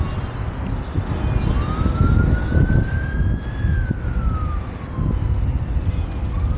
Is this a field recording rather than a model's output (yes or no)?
yes